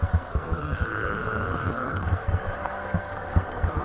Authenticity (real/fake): fake